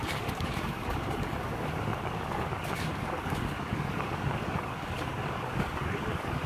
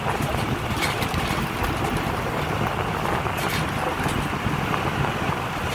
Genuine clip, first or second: second